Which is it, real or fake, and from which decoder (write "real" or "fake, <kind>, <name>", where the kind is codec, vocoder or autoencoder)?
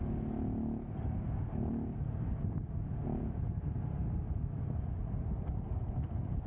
real